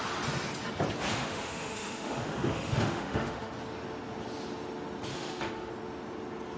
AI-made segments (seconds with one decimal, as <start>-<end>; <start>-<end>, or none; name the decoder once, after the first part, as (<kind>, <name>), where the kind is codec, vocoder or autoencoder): 1.1-3.5 (autoencoder, DAC-VAE); 5.1-5.7